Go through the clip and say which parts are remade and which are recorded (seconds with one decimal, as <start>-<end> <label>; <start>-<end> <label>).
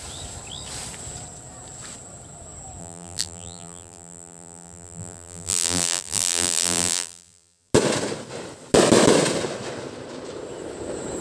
0.0-2.8 recorded; 2.8-7.7 remade; 7.7-11.2 recorded